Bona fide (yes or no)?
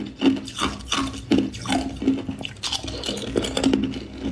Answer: yes